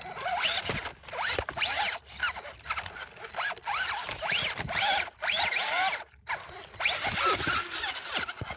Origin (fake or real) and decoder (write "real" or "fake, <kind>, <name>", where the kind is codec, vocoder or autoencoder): real